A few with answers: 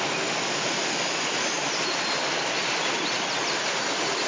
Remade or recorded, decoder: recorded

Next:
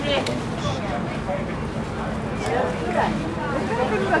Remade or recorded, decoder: recorded